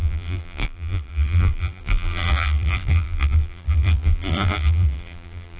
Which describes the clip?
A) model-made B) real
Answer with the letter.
A